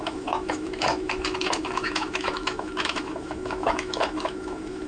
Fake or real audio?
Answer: fake